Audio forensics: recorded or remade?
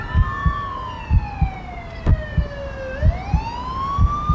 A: recorded